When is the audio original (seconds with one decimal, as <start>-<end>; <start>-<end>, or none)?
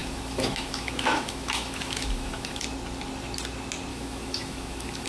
2.6-3.9